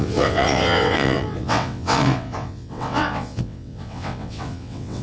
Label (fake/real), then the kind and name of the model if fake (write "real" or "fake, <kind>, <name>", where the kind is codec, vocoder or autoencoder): fake, vocoder, WaveNeXt